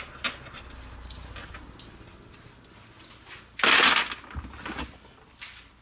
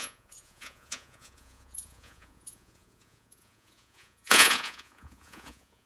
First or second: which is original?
first